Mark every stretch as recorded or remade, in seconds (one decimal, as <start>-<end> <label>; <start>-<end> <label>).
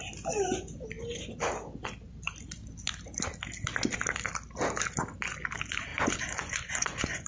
0.0-5.9 recorded; 5.9-7.3 remade